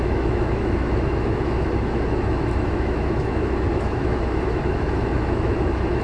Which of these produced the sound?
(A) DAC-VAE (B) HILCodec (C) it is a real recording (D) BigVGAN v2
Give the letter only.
A